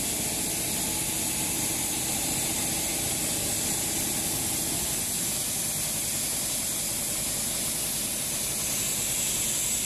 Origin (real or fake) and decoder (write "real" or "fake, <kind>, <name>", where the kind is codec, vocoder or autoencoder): real